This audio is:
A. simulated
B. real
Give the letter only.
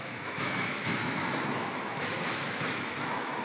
A